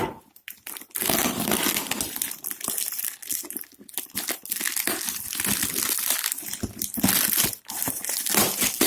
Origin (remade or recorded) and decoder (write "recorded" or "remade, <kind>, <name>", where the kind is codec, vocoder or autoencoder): recorded